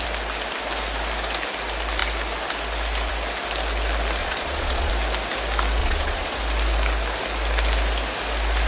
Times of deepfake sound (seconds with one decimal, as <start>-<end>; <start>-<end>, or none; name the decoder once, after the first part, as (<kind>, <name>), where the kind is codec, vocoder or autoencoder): 4.2-4.9 (vocoder, Vocos); 5.8-6.4